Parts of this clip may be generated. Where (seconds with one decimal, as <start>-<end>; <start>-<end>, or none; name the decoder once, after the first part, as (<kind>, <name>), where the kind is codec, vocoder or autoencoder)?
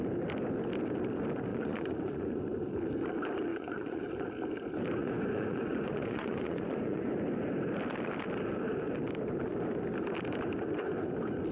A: 1.5-2.4 (vocoder, Vocos); 3.5-4.0; 5.0-7.2